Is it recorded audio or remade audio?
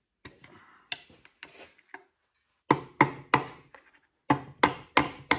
recorded